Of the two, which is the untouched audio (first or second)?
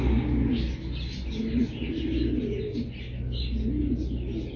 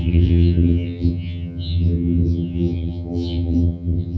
first